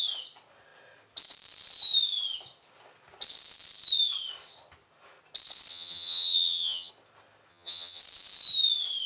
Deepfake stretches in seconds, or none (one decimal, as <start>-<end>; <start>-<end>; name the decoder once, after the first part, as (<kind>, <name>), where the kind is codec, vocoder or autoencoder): 5.7-6.9 (vocoder, HiFi-GAN); 7.5-8.0

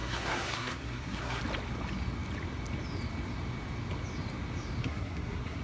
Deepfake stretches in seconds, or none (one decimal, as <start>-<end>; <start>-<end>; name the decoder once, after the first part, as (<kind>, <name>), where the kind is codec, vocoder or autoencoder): 0.0-1.4 (codec, SNAC); 4.8-5.6

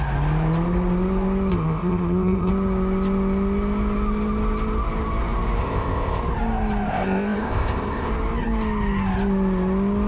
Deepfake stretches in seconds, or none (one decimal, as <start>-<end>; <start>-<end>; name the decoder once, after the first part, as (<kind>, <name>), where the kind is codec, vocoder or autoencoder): 1.5-2.5 (codec, ZipCodec); 5.6-6.2; 6.9-8.1

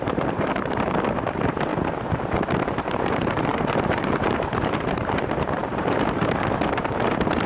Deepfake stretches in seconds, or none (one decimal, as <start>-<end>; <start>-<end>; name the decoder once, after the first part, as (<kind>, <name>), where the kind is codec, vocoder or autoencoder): 0.0-1.7 (vocoder, BigVGAN v2); 2.8-7.5

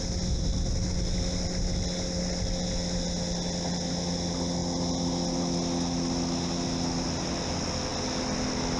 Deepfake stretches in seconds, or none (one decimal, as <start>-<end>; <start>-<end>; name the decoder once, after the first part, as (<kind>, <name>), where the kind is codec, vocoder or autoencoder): none

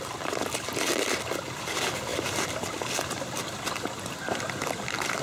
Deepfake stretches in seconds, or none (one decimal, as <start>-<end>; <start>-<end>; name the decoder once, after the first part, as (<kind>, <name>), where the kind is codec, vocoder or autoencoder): none

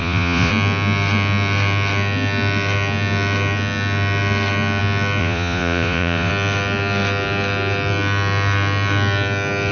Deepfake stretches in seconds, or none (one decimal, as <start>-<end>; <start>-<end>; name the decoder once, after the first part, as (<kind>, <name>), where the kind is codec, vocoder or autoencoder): 0.0-0.5 (vocoder, Vocos); 5.2-6.3